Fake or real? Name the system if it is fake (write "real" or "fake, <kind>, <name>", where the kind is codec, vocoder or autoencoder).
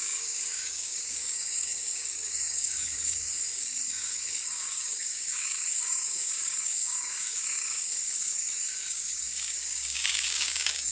fake, codec, DAC